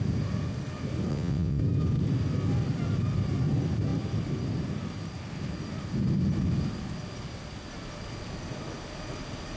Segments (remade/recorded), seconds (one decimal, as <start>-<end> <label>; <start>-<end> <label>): 0.0-1.1 recorded; 1.1-1.6 remade; 1.6-9.6 recorded